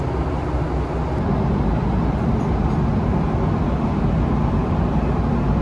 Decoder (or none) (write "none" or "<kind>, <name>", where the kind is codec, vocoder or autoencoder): none